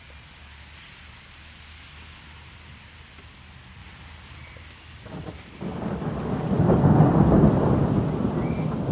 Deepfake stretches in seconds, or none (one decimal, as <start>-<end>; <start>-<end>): none

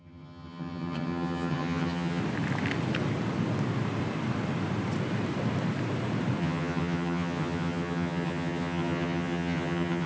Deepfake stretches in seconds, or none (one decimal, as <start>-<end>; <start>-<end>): 0.0-2.2; 6.4-10.1

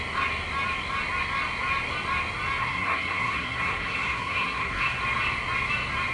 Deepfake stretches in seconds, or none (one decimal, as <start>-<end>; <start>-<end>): 2.6-5.0

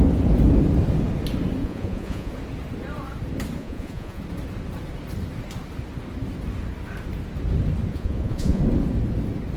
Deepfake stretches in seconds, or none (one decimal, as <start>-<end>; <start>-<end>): 1.6-2.3; 3.6-4.2; 7.9-8.6

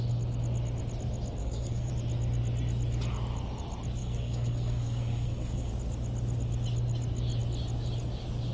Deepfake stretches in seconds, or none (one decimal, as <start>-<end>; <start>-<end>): 1.4-1.9; 4.0-5.7

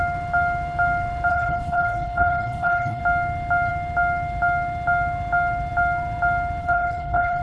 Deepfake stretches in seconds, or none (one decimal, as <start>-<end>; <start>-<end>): 1.3-3.0; 6.6-7.4

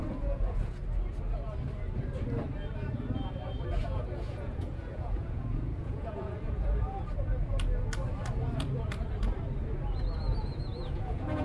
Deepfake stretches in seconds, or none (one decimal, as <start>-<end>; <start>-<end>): 0.0-0.8; 3.8-7.0; 10.4-11.4

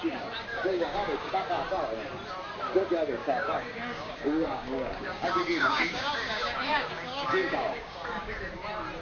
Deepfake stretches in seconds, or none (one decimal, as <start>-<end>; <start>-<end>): 0.5-1.3; 3.2-8.4